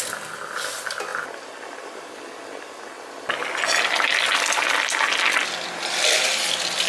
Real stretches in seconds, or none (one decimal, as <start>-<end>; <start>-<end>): 0.0-6.9